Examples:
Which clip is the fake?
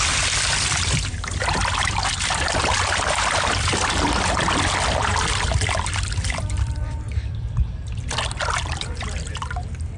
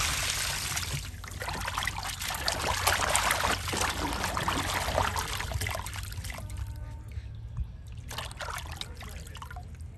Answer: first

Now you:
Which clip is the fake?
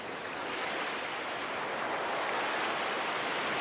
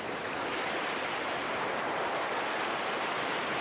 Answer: second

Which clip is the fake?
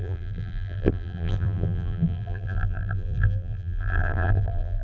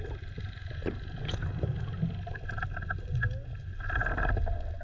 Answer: first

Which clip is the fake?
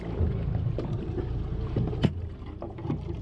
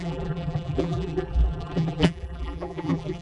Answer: second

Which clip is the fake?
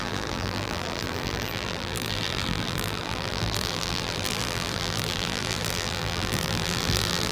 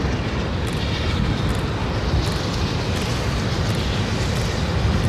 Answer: first